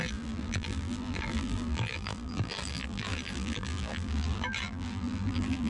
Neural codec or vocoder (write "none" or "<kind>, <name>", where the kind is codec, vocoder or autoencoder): vocoder, BigVGAN v2